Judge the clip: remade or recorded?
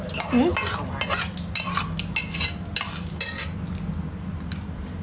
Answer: recorded